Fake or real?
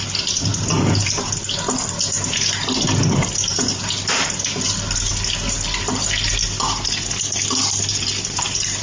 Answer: real